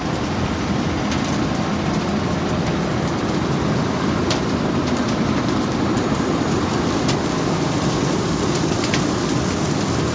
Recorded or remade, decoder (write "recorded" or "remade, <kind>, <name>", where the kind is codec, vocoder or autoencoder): remade, vocoder, BigVGAN v2